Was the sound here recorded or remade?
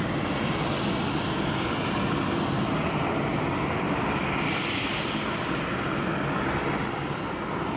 recorded